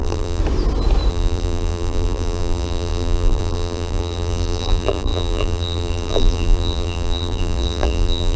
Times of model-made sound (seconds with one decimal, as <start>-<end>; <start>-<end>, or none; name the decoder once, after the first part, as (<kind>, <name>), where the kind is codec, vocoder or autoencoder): 0.0-0.4 (vocoder, BigVGAN v2); 1.1-8.4

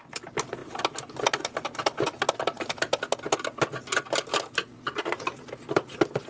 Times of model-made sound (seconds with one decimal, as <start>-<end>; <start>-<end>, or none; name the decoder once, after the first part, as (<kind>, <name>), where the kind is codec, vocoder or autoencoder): none

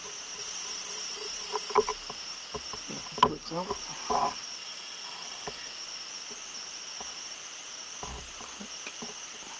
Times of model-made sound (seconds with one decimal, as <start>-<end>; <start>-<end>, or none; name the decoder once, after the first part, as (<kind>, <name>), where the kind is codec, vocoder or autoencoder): 4.6-5.7 (vocoder, Vocos)

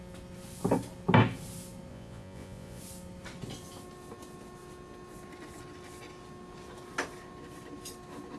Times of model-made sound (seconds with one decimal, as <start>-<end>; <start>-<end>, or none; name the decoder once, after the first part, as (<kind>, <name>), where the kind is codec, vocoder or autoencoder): 1.9-2.8 (vocoder, Vocos)